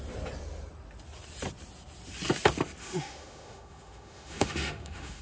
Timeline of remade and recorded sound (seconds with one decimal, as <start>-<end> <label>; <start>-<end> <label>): 0.0-2.8 recorded; 2.8-5.2 remade